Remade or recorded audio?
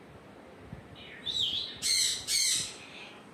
recorded